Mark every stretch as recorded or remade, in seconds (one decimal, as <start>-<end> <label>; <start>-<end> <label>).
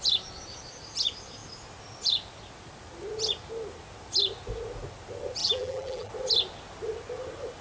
0.0-5.4 recorded; 5.4-6.1 remade; 6.1-7.6 recorded